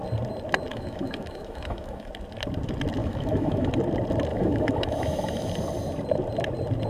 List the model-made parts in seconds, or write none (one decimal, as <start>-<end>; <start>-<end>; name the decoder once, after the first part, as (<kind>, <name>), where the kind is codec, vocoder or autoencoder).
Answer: 0.7-2.1 (autoencoder, DAC-VAE); 3.0-3.7; 4.3-5.5

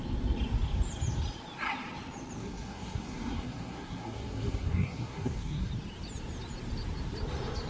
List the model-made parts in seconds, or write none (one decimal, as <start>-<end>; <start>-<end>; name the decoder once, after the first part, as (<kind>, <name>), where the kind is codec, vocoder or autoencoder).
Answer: 2.4-5.7 (codec, SNAC)

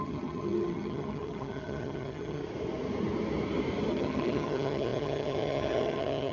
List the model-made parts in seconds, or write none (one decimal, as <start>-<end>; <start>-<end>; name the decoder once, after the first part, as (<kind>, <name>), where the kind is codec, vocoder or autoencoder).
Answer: 0.0-2.4 (vocoder, HiFi-GAN); 3.9-6.3

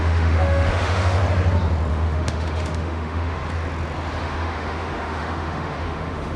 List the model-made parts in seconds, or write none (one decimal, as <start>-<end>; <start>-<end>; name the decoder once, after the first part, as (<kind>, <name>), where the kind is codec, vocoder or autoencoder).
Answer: 0.0-1.2 (autoencoder, DAC-VAE); 1.9-3.4; 4.2-6.4